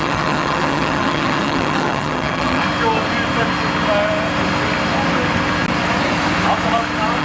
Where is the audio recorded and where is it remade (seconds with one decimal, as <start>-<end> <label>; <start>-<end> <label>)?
0.0-2.6 remade; 2.6-7.2 recorded